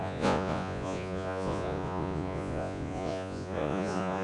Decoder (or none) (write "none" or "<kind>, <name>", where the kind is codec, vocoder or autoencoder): vocoder, Vocos